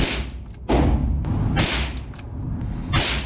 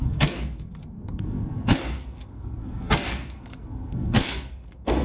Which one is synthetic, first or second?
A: second